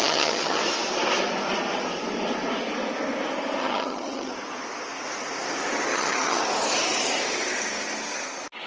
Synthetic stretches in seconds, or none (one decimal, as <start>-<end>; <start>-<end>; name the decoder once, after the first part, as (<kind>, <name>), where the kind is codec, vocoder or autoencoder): 0.0-0.6 (vocoder, HiFi-GAN); 3.6-4.3; 5.9-6.4